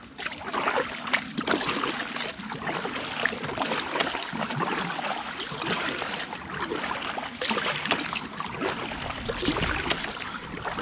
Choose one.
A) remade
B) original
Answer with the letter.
B